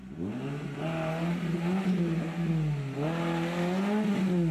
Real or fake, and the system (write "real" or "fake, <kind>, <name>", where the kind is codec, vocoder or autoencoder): real